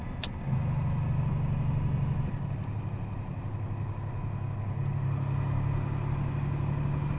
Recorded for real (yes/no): yes